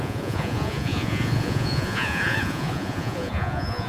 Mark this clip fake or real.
fake